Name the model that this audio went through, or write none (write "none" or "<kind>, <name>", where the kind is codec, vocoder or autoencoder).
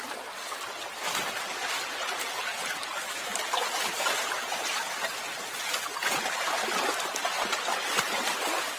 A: none